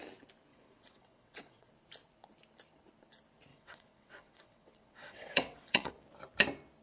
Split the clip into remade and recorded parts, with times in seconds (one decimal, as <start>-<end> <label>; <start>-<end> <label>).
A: 0.0-0.5 recorded; 0.5-1.7 remade; 1.7-3.5 recorded; 3.5-5.9 remade; 5.9-6.8 recorded